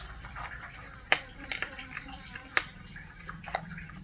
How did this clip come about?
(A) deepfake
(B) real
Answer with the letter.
A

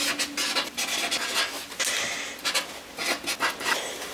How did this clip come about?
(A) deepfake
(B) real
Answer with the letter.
B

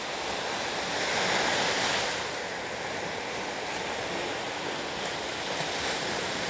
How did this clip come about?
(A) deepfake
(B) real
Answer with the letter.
B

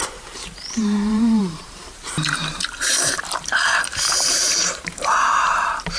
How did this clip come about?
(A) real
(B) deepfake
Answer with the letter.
B